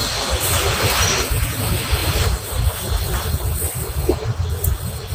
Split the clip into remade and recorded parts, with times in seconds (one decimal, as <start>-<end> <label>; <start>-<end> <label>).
0.0-2.0 recorded; 2.0-3.9 remade; 3.9-5.1 recorded